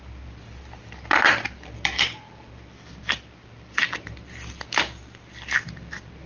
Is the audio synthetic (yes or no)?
yes